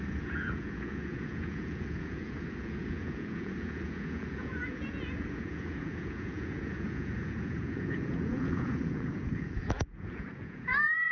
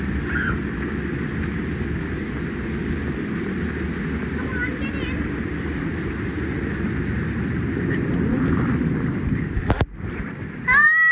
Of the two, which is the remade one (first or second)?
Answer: first